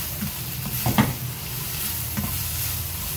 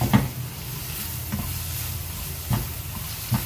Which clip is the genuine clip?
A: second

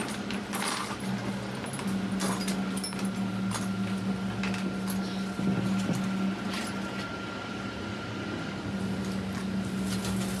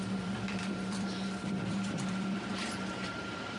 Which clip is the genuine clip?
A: first